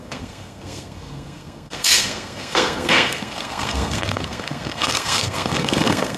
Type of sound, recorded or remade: remade